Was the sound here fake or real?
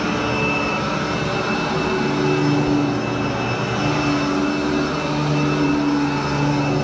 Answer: real